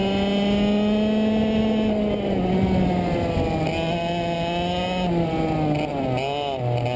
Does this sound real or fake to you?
real